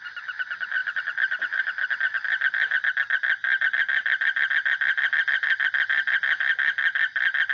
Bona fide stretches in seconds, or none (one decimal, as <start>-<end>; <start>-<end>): 0.0-0.8; 1.6-3.4; 4.5-7.5